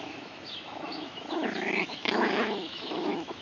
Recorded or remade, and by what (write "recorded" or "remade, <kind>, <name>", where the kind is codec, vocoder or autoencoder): remade, autoencoder, DAC-VAE